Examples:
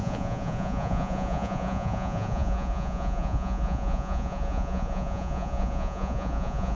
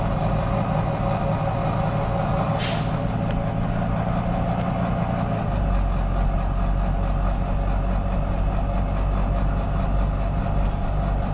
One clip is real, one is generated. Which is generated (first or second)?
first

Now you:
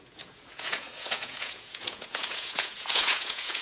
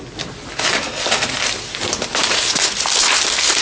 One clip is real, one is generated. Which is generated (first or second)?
first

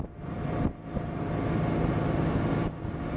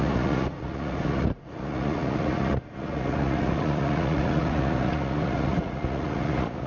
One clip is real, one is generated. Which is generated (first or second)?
second